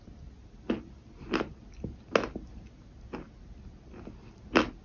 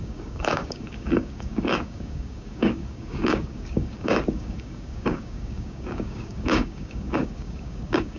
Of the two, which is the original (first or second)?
first